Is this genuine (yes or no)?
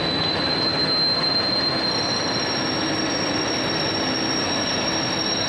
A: yes